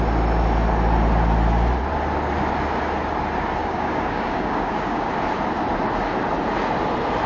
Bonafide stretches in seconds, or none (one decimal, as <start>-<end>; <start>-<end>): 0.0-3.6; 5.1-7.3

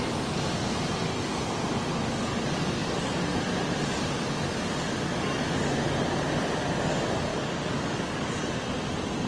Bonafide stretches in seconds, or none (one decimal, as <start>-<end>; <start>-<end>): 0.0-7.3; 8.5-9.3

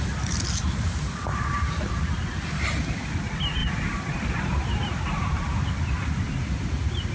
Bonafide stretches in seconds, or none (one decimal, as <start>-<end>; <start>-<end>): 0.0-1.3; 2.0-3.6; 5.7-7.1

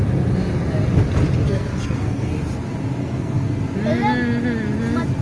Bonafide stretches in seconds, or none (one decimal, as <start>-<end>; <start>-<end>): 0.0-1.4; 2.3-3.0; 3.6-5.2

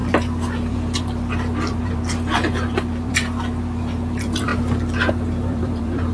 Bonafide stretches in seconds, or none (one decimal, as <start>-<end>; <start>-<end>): 4.5-5.1

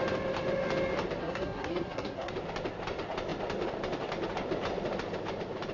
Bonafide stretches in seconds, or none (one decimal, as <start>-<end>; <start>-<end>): 0.0-1.2; 2.3-5.7